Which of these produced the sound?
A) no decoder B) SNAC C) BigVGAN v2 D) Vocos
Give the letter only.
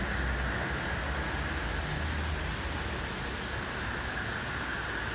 A